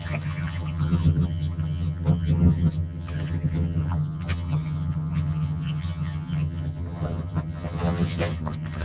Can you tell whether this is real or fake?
fake